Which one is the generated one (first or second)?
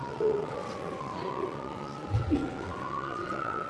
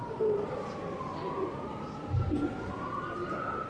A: first